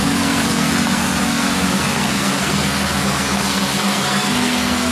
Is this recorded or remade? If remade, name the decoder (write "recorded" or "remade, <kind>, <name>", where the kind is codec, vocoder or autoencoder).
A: remade, codec, SNAC